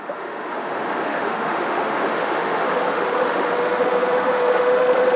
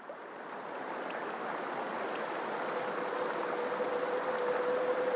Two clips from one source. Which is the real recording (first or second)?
second